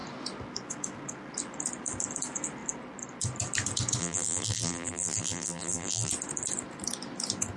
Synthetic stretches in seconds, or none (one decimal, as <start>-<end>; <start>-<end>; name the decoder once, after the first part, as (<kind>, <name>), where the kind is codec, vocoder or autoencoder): 4.0-6.1 (vocoder, BigVGAN v2)